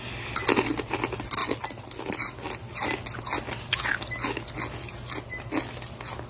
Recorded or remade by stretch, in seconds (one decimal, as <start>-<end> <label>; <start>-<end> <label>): 0.0-6.3 recorded